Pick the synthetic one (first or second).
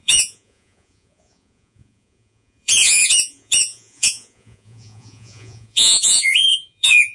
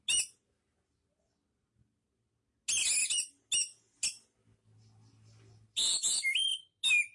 first